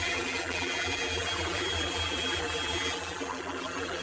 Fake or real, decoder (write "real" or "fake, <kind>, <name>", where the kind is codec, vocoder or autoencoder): fake, vocoder, BigVGAN v2